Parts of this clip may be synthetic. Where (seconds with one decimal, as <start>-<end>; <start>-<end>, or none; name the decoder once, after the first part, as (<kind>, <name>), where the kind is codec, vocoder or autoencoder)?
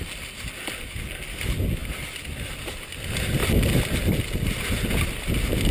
3.4-4.1 (vocoder, BigVGAN v2)